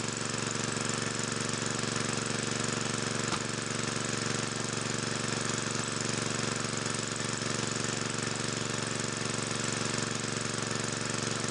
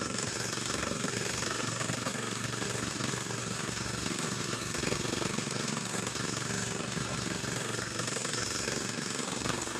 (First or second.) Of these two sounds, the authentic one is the first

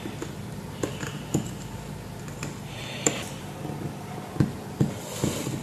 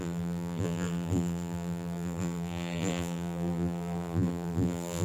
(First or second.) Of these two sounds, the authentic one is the first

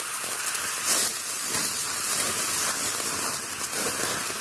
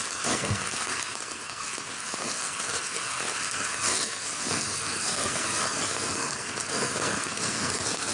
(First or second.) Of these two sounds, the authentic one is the first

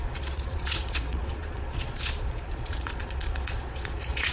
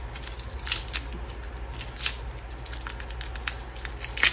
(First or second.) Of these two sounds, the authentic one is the second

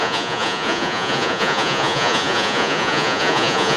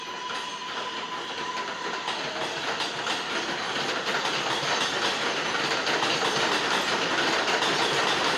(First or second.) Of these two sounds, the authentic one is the second